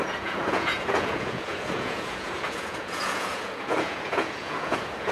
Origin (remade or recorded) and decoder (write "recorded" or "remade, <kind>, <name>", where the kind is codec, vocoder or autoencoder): remade, vocoder, Vocos